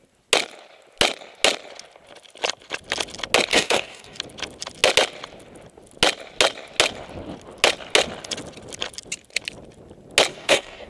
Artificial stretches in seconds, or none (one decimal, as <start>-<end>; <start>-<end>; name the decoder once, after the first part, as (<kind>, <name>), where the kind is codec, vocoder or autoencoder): 3.5-4.2 (codec, DAC); 10.3-10.9